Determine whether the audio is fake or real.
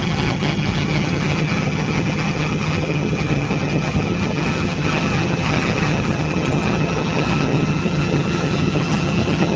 fake